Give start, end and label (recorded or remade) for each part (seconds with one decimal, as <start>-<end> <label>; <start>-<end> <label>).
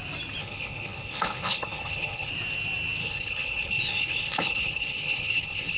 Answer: 0.0-0.4 recorded; 0.4-2.3 remade; 2.3-3.0 recorded; 3.0-5.8 remade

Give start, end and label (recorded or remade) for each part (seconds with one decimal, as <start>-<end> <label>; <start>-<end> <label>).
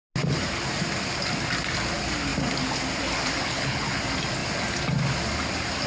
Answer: 0.0-3.4 recorded; 3.4-4.0 remade; 4.0-5.9 recorded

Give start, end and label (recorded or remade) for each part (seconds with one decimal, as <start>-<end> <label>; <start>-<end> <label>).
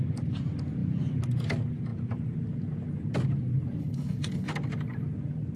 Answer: 0.0-3.8 recorded; 3.8-4.5 remade; 4.5-5.6 recorded